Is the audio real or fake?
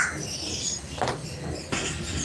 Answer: real